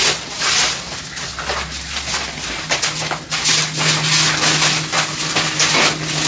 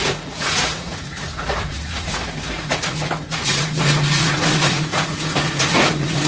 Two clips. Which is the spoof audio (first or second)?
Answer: second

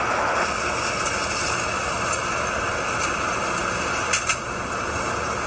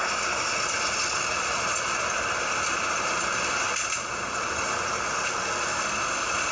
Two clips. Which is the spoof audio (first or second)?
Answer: second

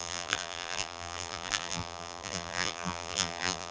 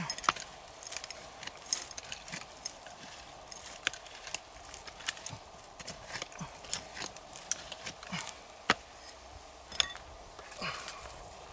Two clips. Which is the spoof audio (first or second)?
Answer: first